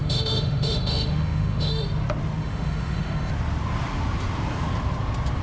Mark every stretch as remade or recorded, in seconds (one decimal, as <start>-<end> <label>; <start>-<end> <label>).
0.0-1.7 remade; 1.7-2.4 recorded; 2.4-3.3 remade; 3.3-5.4 recorded